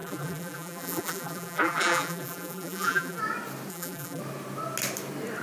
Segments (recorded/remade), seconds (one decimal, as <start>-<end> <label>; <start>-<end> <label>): 0.0-3.2 remade; 3.2-3.7 recorded; 3.7-4.2 remade; 4.2-5.4 recorded